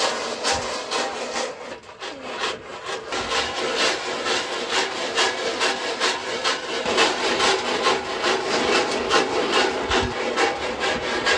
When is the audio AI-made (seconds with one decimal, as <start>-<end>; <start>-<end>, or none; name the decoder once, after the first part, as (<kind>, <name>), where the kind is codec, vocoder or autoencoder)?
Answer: none